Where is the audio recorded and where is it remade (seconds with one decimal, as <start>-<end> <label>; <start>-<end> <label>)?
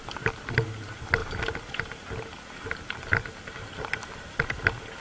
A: 0.0-5.0 recorded